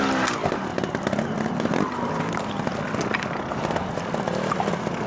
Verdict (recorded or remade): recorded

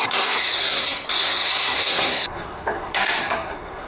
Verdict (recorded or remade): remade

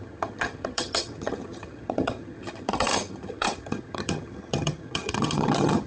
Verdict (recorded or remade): remade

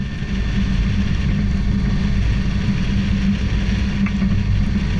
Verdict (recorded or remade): recorded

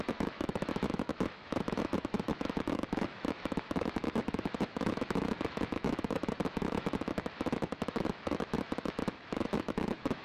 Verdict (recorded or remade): remade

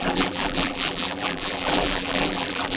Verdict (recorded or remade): remade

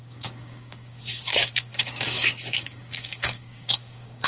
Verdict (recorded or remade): remade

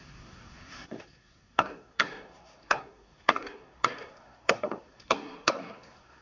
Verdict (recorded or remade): remade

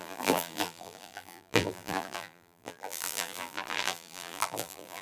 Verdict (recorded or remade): remade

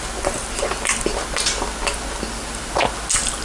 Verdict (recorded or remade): recorded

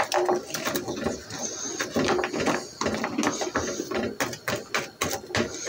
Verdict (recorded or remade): recorded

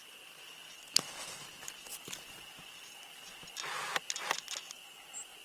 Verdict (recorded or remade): recorded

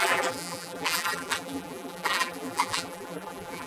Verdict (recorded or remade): remade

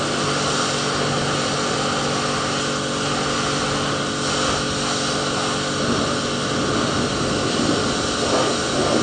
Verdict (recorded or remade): recorded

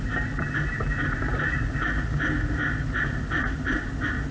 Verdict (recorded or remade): recorded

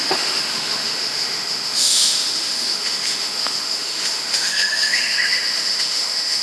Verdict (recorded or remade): remade